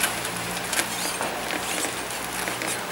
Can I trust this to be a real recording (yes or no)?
yes